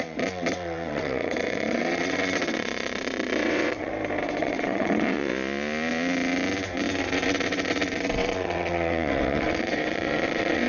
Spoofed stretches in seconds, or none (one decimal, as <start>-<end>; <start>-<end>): 0.0-3.9; 4.4-5.3; 7.0-10.7